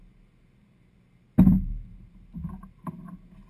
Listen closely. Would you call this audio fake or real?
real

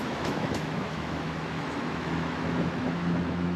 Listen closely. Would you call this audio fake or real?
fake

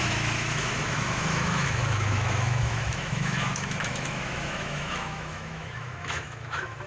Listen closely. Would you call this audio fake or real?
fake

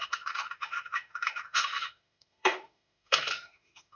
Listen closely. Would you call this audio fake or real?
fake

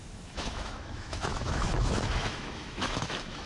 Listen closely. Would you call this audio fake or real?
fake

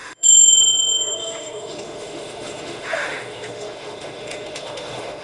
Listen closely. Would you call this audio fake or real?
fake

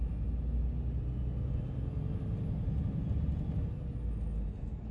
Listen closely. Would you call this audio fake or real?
real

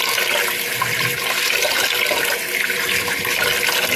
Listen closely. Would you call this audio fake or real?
real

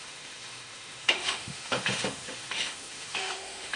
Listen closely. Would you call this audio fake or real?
fake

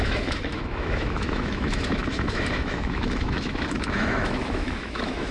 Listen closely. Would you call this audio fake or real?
fake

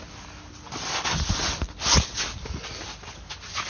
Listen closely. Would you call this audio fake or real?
real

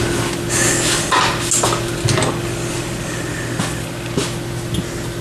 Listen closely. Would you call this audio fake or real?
real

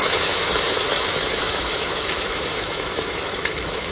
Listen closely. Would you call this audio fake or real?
fake